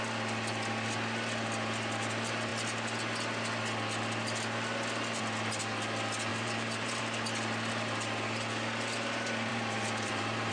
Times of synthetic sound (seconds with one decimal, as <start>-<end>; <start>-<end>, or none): 6.3-7.0; 9.5-10.5